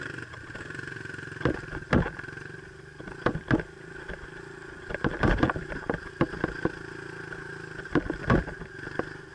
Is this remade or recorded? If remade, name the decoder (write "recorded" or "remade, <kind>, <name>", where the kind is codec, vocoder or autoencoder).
recorded